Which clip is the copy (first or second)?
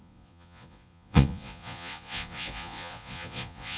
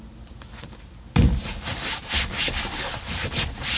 first